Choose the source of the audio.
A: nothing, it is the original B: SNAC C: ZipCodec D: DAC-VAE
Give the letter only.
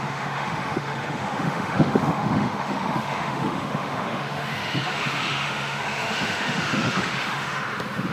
D